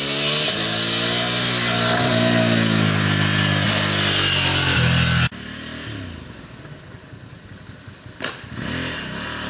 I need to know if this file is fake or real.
real